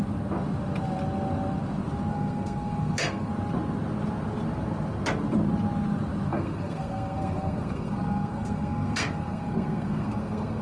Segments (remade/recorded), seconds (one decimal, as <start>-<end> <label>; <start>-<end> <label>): 0.0-2.1 recorded; 2.1-3.3 remade; 3.3-6.3 recorded; 6.3-10.6 remade